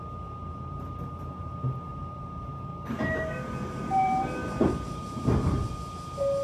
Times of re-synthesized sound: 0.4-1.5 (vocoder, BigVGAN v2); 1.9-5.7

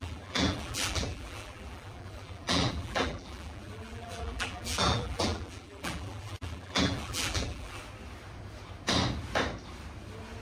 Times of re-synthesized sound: 0.0-7.8 (vocoder, BigVGAN v2)

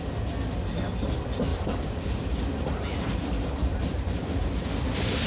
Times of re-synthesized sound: 1.5-4.3 (vocoder, BigVGAN v2)

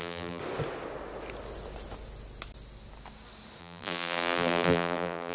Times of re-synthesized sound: 0.0-0.4 (vocoder, BigVGAN v2); 3.6-5.3